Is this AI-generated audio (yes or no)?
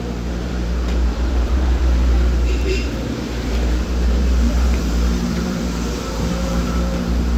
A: yes